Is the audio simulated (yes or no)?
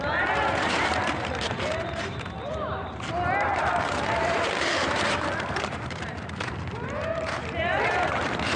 yes